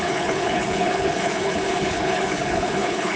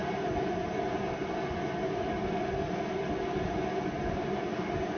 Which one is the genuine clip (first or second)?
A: second